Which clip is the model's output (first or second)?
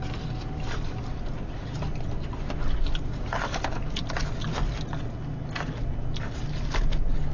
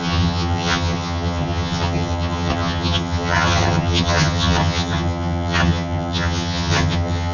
second